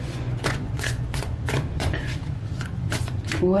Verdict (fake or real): fake